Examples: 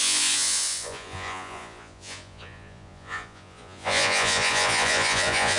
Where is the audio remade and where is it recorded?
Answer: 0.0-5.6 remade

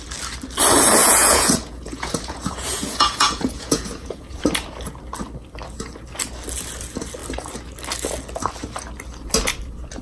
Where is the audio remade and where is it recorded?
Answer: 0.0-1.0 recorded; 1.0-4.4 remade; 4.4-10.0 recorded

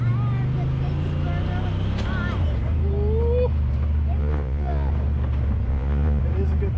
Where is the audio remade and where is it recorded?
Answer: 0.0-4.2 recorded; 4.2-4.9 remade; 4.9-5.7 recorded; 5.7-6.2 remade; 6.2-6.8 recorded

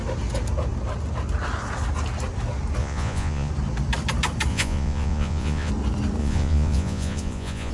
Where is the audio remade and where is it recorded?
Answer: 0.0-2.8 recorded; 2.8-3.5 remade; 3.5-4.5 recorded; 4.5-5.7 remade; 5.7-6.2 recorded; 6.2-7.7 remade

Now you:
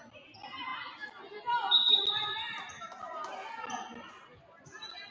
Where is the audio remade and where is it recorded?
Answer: 0.0-5.1 recorded